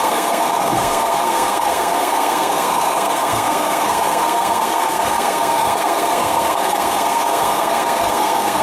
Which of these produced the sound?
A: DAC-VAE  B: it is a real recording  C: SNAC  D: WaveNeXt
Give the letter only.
C